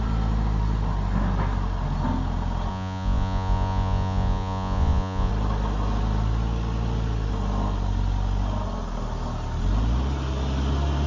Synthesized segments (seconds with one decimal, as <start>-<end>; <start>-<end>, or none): 2.7-5.3